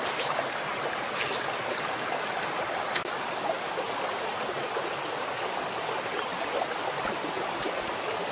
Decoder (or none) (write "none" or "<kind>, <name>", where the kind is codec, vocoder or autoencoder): none